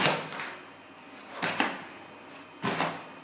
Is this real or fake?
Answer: real